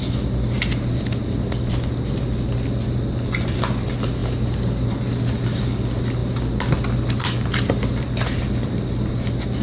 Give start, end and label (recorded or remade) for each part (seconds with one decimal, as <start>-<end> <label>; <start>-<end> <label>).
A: 0.0-4.2 recorded; 4.2-4.9 remade; 4.9-6.2 recorded; 6.2-9.1 remade; 9.1-9.6 recorded